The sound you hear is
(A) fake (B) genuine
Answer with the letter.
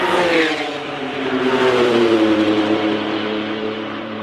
A